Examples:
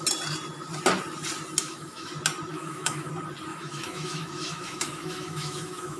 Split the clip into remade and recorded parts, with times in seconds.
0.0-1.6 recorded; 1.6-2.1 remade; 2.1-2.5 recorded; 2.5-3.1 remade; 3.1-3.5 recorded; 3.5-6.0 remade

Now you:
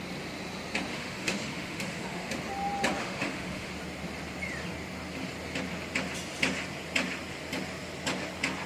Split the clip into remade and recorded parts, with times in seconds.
0.0-0.9 recorded; 0.9-2.3 remade; 2.3-3.0 recorded; 3.0-3.7 remade; 3.7-8.7 recorded